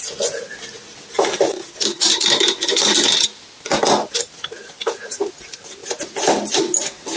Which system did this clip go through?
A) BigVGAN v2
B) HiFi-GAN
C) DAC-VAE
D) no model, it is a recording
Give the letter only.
D